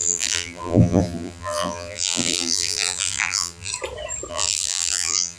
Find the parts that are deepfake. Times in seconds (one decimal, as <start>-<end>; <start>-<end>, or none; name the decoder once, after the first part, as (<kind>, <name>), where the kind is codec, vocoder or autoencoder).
0.0-3.7 (vocoder, BigVGAN v2); 4.3-5.4